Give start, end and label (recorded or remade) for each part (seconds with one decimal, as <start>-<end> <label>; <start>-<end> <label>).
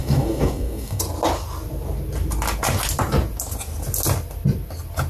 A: 0.0-1.0 remade; 1.0-5.1 recorded